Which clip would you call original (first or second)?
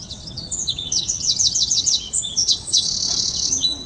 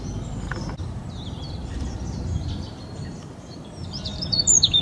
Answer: second